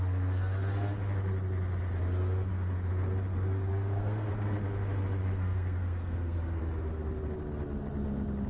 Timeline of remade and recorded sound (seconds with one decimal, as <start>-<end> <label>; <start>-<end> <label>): 0.0-3.7 recorded; 3.7-4.3 remade; 4.3-5.2 recorded; 5.2-6.6 remade; 6.6-8.5 recorded